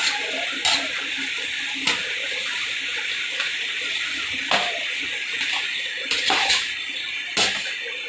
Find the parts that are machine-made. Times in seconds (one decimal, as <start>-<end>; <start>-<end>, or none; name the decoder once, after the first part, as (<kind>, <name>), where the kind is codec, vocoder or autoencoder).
none